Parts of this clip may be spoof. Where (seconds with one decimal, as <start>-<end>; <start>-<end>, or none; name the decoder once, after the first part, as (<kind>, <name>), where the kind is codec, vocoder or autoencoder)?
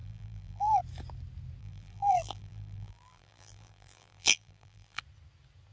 0.0-0.8 (vocoder, BigVGAN v2); 1.6-5.0